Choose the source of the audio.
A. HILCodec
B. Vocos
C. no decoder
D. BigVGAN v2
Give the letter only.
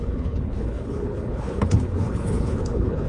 A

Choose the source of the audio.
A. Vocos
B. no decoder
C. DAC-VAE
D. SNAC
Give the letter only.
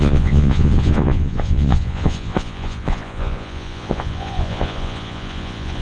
A